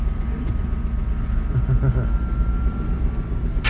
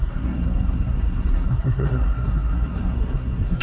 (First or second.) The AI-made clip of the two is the second